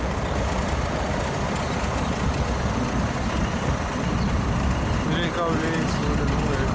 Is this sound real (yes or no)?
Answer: yes